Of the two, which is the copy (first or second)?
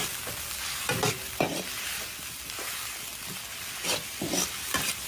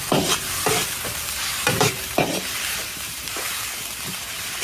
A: second